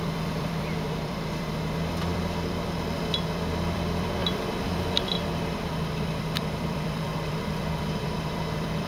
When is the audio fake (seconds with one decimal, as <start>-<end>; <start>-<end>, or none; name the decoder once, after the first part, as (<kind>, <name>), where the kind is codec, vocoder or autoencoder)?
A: 0.0-8.9 (vocoder, BigVGAN v2)